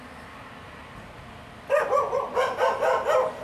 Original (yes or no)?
yes